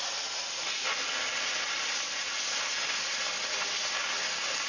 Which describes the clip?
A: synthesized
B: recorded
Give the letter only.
B